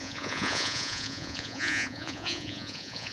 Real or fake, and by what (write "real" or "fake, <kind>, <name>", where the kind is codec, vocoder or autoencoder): fake, vocoder, Vocos